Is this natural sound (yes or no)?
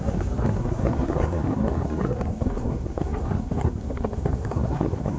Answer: no